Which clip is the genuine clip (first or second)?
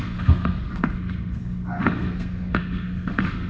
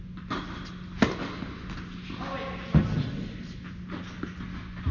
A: second